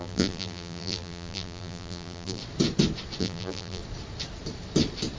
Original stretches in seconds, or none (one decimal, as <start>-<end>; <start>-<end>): 2.4-3.2; 3.8-5.2